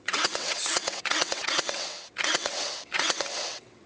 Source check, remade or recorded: remade